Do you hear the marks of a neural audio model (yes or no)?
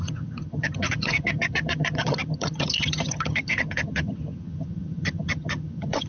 yes